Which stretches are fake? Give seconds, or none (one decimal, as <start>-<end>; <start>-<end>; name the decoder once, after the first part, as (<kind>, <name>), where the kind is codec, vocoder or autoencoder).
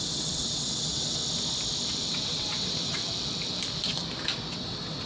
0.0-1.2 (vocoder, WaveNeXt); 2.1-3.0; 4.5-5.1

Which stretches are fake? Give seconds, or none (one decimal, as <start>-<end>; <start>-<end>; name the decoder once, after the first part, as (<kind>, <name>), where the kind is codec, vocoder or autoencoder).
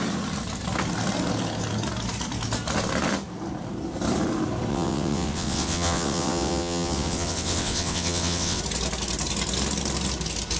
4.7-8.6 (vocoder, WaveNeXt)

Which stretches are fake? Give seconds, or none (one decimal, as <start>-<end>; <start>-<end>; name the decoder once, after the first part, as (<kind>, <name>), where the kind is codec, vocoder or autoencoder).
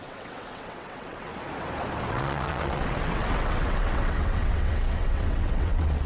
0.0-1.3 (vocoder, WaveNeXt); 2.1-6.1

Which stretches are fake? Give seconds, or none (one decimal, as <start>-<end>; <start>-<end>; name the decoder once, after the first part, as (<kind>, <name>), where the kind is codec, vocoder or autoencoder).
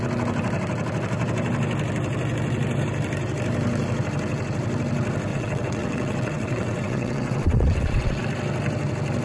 5.3-8.2 (vocoder, WaveNeXt)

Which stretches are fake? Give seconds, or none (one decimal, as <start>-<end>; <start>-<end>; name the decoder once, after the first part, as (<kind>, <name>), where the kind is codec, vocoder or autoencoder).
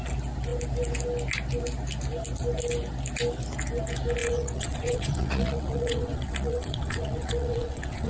4.2-8.1 (vocoder, WaveNeXt)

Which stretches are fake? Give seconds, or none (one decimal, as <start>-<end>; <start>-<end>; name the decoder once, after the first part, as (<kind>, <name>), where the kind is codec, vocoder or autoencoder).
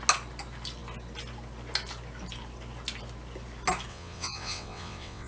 3.9-5.3 (vocoder, WaveNeXt)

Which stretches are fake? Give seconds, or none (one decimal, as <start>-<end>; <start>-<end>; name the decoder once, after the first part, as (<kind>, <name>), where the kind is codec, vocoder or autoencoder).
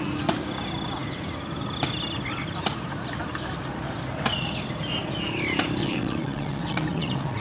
5.8-7.4 (vocoder, WaveNeXt)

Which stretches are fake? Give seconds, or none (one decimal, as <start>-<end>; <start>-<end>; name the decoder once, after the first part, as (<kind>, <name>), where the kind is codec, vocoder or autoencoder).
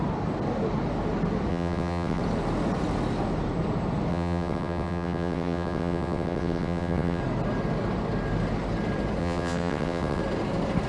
1.5-2.2 (vocoder, WaveNeXt); 4.1-7.2; 9.2-10.2